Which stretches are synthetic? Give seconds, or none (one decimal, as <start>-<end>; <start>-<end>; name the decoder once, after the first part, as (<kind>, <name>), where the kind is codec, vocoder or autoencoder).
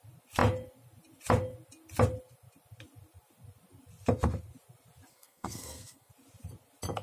5.1-6.1 (codec, SNAC)